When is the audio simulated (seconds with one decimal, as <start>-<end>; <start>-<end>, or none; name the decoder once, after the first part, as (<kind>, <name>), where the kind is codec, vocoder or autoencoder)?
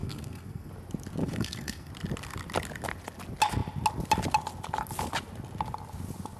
0.0-0.7 (codec, SNAC); 1.2-1.9